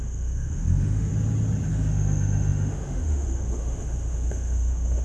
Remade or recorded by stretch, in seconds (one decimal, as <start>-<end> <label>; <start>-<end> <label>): 0.0-1.1 remade; 1.1-1.7 recorded; 1.7-5.0 remade